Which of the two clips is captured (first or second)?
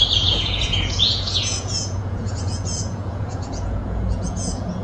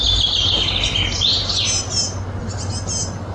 second